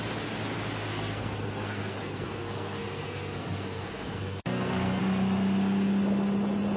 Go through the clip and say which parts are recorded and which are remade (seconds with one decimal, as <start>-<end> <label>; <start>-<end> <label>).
0.0-0.9 recorded; 0.9-5.0 remade; 5.0-6.8 recorded